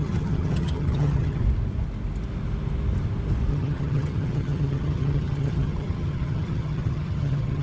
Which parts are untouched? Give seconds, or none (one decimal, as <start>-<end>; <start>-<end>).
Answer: 1.4-3.5